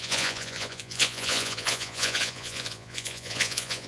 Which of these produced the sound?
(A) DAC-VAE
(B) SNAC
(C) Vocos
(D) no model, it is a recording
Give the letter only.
C